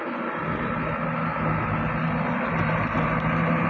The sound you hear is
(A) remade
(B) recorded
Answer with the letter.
B